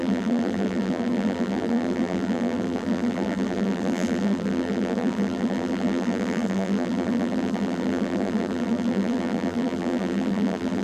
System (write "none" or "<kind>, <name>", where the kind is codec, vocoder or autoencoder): vocoder, BigVGAN v2